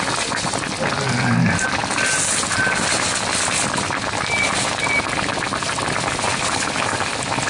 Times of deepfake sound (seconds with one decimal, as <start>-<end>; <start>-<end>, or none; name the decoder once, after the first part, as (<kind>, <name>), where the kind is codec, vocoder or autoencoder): none